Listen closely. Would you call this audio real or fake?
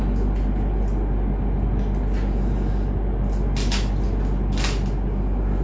real